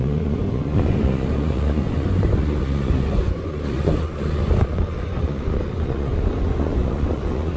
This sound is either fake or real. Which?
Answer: fake